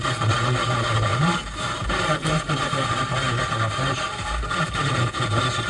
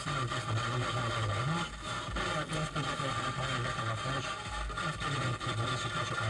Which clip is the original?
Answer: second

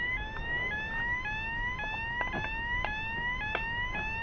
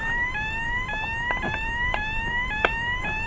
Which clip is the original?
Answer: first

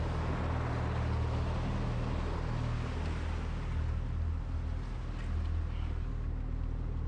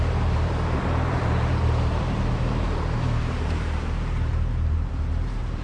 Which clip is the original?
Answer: first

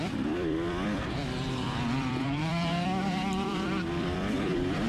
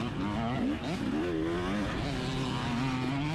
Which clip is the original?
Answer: second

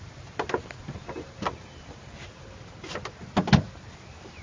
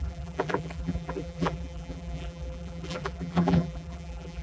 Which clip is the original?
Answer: first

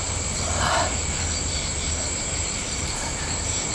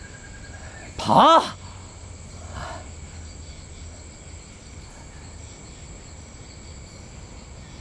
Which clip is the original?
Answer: second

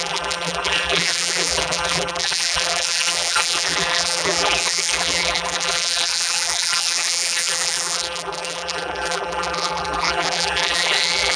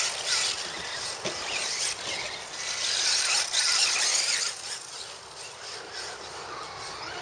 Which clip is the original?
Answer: second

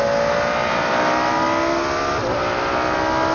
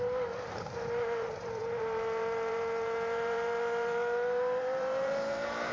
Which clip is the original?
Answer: first